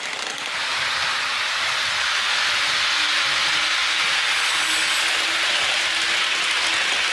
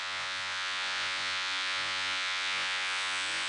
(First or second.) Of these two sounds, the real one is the first